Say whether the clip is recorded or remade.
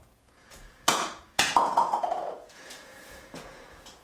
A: remade